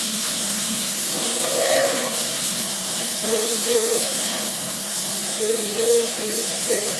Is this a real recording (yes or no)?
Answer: no